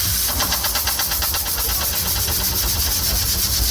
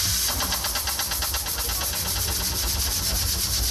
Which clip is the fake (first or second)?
first